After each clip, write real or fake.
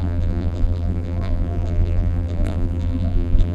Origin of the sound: fake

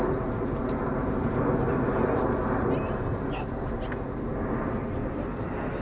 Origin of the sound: real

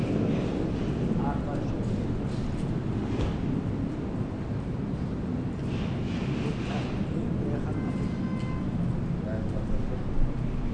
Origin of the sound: real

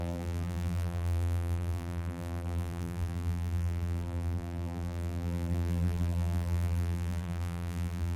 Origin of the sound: fake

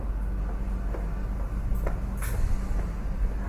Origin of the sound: real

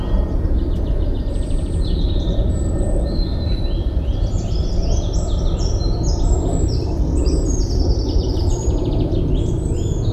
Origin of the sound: fake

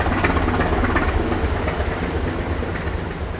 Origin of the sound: real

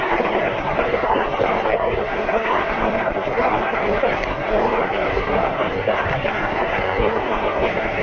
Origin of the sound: fake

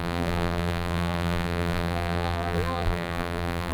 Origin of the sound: fake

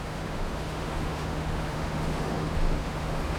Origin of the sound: fake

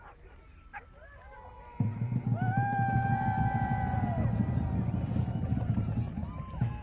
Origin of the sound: fake